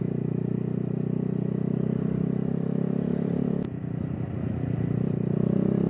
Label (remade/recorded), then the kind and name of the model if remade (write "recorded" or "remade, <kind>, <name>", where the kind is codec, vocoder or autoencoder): recorded